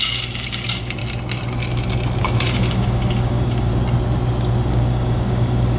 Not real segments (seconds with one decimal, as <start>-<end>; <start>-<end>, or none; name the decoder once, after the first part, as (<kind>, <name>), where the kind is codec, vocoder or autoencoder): 0.0-1.0 (codec, DAC); 2.2-3.7; 4.7-5.8